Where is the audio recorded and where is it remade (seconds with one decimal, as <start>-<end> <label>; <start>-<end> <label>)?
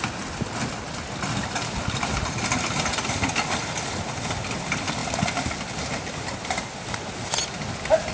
0.0-8.1 recorded